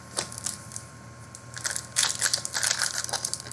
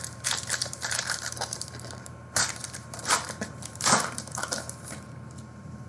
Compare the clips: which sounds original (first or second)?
first